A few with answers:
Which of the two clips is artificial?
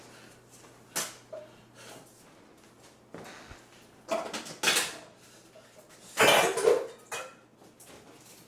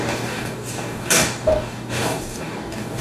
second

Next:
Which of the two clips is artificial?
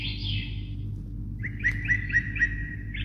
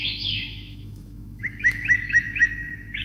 second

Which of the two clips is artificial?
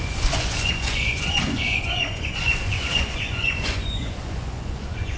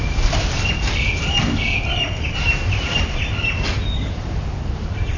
first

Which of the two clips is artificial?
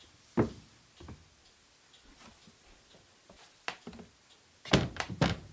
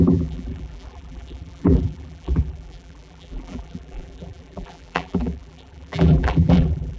second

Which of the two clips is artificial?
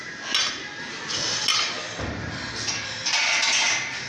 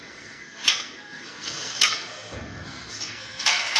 second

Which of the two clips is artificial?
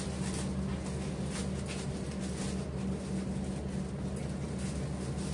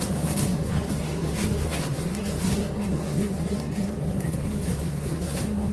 second